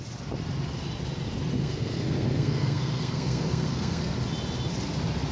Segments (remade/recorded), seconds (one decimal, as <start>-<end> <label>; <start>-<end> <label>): 0.0-1.6 recorded; 1.6-4.0 remade; 4.0-5.3 recorded